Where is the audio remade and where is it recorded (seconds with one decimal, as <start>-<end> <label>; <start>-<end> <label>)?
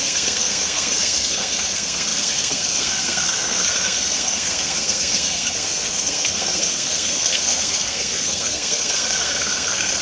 0.0-10.0 remade